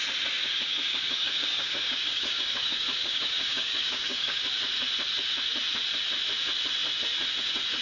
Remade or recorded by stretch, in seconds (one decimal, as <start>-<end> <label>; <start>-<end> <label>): 0.0-0.4 recorded; 0.4-4.4 remade; 4.4-7.8 recorded